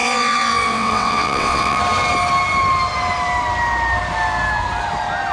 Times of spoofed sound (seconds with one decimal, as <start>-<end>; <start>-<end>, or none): 0.0-1.8